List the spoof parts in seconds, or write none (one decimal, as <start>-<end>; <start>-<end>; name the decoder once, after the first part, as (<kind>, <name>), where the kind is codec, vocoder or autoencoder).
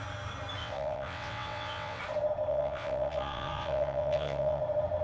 0.6-2.0 (vocoder, WaveNeXt); 2.5-4.6